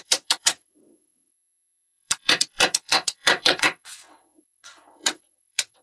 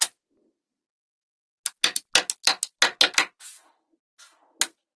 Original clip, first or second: second